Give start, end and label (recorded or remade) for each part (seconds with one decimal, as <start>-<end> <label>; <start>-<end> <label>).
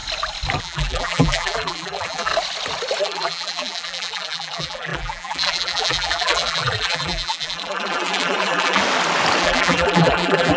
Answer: 0.0-0.6 recorded; 0.6-2.3 remade; 2.3-3.0 recorded; 3.0-8.8 remade; 8.8-9.4 recorded; 9.4-10.6 remade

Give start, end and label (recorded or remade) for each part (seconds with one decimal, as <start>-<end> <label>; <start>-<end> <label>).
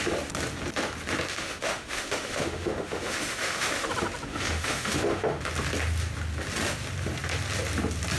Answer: 0.0-1.3 recorded; 1.3-3.9 remade; 3.9-4.3 recorded; 4.3-5.4 remade; 5.4-8.2 recorded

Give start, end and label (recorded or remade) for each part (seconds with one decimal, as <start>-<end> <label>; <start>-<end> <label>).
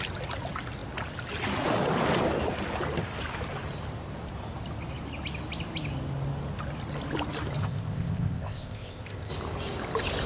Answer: 0.0-7.6 recorded; 7.6-9.3 remade; 9.3-10.3 recorded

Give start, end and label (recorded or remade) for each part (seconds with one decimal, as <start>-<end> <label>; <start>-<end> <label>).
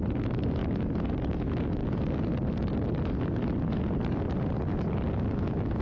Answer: 0.0-0.6 remade; 0.6-1.3 recorded; 1.3-1.8 remade; 1.8-5.3 recorded; 5.3-5.8 remade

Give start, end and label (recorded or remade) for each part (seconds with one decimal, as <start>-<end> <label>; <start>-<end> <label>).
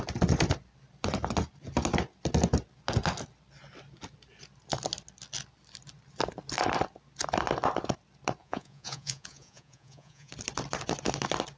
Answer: 0.0-8.4 recorded; 8.4-10.3 remade; 10.3-11.6 recorded